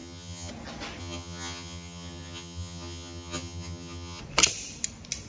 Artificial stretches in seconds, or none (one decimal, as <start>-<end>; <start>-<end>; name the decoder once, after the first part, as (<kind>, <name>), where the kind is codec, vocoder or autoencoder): 0.0-0.5 (vocoder, HiFi-GAN); 1.0-4.2